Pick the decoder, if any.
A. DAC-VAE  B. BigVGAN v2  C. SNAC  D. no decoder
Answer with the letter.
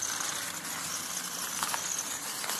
D